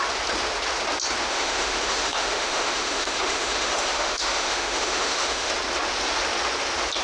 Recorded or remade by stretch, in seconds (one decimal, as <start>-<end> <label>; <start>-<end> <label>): 0.0-1.3 recorded; 1.3-5.5 remade; 5.5-7.0 recorded